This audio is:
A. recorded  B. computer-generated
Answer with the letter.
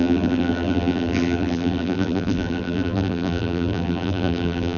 B